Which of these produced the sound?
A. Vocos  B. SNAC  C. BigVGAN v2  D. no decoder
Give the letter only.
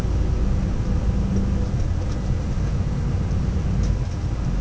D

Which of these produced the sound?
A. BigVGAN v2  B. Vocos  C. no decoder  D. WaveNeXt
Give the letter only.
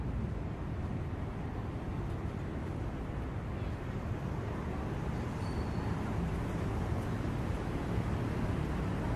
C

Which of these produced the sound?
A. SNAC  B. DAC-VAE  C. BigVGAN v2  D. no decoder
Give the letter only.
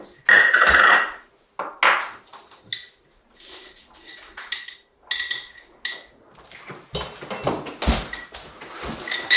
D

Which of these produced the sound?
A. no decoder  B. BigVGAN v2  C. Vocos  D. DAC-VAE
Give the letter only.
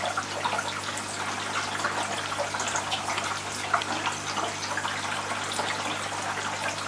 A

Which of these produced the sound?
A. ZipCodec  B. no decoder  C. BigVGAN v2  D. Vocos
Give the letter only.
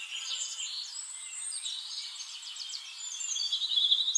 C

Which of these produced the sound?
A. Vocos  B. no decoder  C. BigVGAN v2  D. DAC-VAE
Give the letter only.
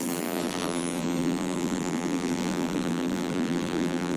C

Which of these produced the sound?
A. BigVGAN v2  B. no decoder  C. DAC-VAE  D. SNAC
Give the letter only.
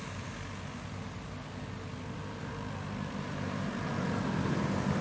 B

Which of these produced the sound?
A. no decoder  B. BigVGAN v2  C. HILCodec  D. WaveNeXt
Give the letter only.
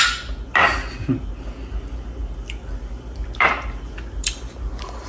A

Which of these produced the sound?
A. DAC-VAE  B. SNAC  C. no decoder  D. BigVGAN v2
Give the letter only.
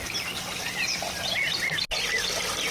C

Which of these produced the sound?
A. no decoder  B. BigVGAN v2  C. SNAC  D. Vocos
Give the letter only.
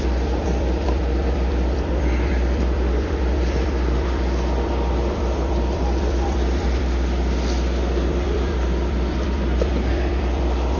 B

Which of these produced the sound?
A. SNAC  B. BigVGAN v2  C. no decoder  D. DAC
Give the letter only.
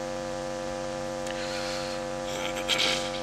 B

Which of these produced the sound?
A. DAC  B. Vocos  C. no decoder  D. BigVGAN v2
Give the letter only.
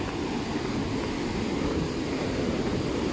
C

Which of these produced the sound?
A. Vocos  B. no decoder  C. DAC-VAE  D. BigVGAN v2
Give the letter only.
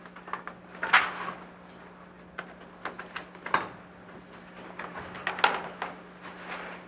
B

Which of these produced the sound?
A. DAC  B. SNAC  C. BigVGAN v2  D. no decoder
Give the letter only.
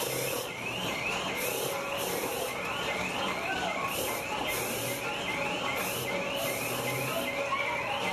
D